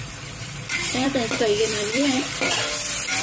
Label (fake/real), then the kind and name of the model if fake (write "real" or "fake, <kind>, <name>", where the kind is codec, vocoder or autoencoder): fake, vocoder, BigVGAN v2